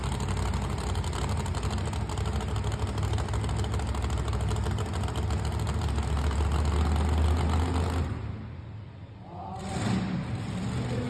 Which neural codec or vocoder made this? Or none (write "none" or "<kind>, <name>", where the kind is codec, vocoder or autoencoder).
none